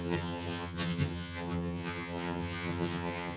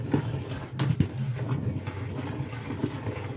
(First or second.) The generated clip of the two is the first